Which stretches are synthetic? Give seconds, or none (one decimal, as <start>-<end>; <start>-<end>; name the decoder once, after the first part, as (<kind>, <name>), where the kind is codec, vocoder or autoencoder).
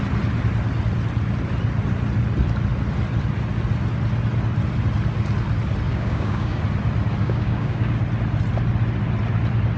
5.9-6.6 (codec, DAC); 7.2-8.0